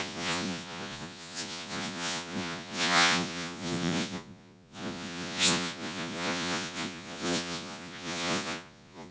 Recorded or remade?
remade